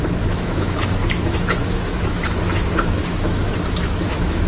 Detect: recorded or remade remade